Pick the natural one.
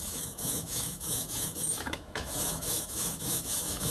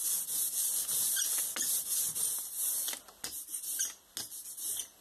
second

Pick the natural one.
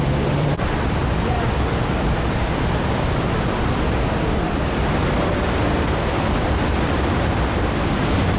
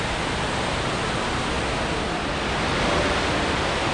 second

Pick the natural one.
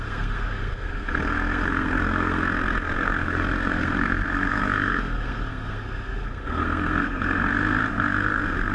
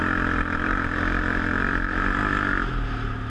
second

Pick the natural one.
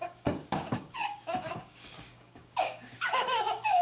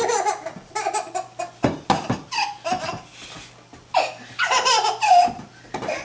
second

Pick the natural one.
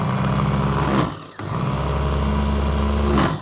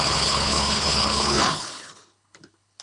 first